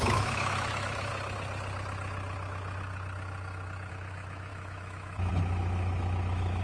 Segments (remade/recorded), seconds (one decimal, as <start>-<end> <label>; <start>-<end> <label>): 0.0-1.1 remade; 1.1-3.9 recorded; 3.9-6.6 remade